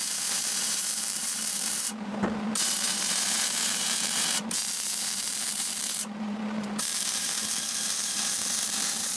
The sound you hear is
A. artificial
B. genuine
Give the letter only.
A